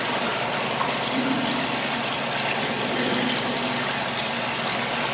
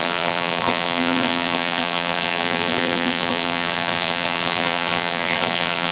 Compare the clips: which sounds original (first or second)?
first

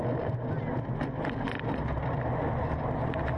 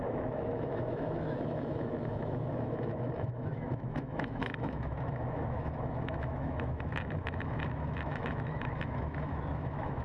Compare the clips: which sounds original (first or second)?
first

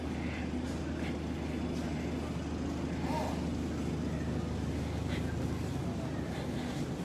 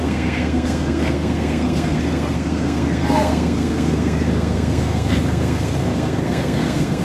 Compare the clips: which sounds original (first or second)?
first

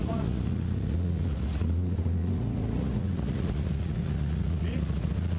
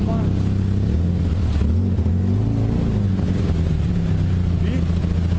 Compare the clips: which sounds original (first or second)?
second